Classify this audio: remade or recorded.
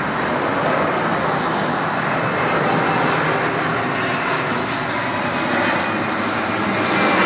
recorded